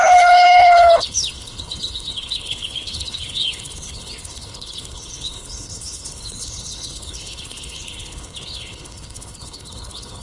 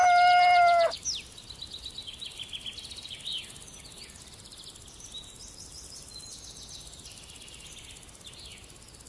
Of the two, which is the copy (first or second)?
first